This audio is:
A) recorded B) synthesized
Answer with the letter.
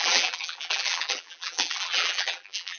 B